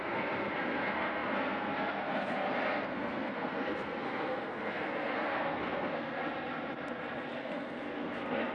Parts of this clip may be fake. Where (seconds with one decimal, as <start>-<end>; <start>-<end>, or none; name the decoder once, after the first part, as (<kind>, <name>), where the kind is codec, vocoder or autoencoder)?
0.0-6.2 (codec, SNAC); 7.4-8.5